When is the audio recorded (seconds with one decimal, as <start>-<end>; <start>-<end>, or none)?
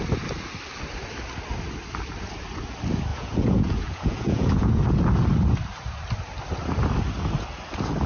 0.0-3.1; 4.8-8.1